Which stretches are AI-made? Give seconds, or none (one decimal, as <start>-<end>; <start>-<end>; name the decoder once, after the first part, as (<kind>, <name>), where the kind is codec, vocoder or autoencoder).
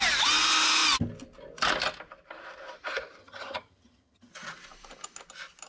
3.2-4.3 (vocoder, HiFi-GAN)